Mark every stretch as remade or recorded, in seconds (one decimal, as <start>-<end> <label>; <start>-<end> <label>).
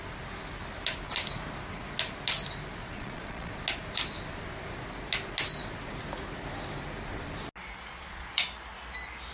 0.0-2.8 recorded; 2.8-3.5 remade; 3.5-7.9 recorded; 7.9-8.5 remade; 8.5-9.3 recorded